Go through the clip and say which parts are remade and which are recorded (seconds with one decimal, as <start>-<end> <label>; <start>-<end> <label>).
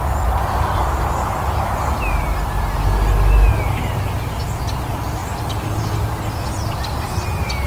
0.0-5.2 recorded; 5.2-6.1 remade; 6.1-7.7 recorded